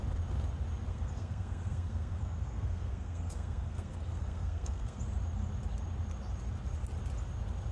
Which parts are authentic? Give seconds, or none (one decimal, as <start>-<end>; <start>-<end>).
0.0-0.9; 5.0-7.7